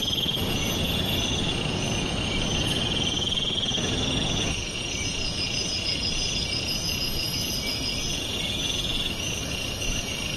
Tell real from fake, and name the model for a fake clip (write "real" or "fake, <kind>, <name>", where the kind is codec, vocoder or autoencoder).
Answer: fake, vocoder, Vocos